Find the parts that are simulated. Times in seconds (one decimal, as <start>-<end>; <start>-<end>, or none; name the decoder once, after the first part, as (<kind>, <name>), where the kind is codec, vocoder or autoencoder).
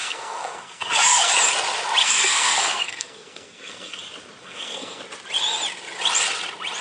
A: 0.0-1.3 (codec, SNAC); 2.0-4.0; 4.4-5.0